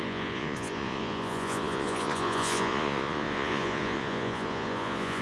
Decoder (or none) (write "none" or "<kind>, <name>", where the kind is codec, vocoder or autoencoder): vocoder, Vocos